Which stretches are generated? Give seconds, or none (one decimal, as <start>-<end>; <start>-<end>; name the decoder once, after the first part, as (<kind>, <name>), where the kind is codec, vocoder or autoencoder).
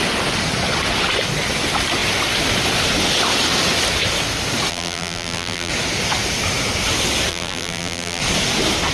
4.7-5.7 (vocoder, BigVGAN v2); 7.3-8.2